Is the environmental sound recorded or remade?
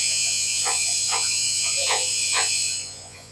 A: remade